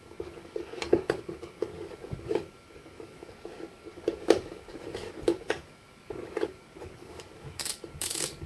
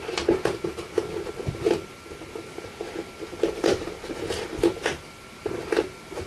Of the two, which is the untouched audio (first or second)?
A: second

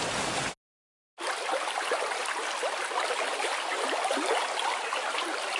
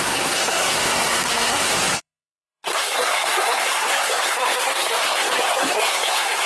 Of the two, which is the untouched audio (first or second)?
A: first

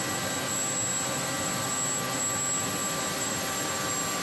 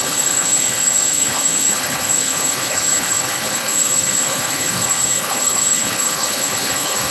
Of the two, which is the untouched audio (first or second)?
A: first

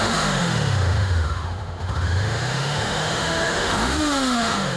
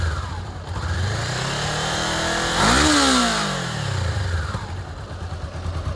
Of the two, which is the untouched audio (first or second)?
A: second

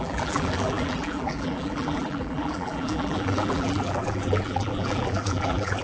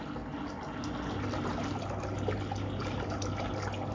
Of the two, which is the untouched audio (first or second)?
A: second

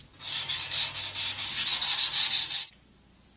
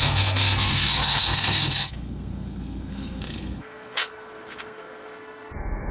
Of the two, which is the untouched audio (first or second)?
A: first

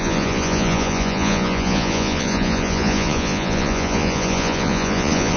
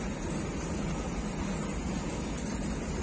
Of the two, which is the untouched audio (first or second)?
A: second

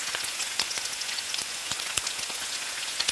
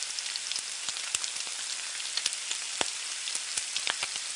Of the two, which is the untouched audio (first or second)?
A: second